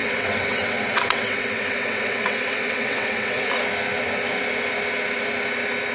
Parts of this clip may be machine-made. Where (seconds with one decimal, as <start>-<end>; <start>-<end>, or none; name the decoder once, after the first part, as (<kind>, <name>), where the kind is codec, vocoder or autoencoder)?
0.0-3.5 (vocoder, WaveNeXt)